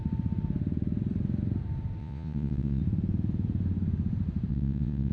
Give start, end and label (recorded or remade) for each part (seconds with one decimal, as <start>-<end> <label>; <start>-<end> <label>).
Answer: 0.0-2.0 recorded; 2.0-2.8 remade; 2.8-4.5 recorded; 4.5-5.1 remade